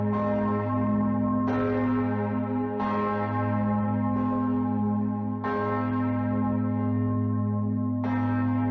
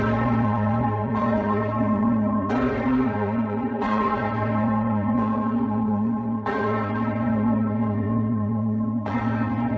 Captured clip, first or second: first